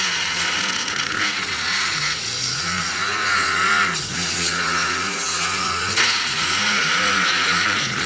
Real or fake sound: fake